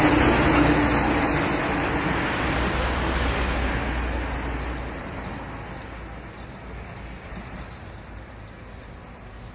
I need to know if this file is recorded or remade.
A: recorded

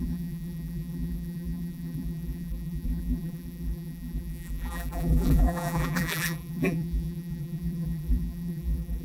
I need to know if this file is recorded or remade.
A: remade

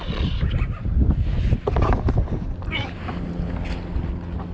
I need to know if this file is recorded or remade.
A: recorded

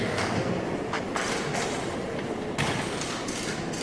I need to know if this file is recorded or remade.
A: recorded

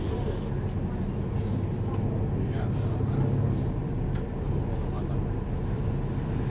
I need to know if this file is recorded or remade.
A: recorded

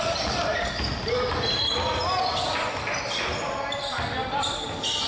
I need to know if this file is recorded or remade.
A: recorded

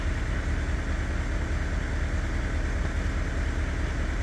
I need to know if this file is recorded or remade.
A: recorded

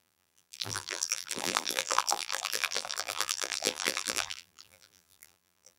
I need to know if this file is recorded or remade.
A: remade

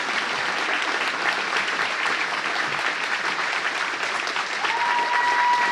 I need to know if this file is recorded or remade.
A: recorded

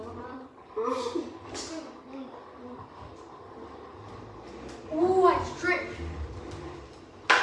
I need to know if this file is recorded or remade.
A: recorded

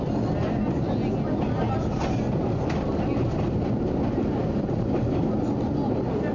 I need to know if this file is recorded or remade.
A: recorded